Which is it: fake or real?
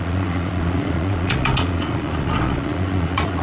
fake